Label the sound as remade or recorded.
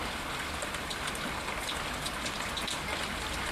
recorded